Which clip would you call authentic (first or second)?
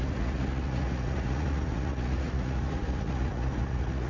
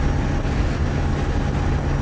second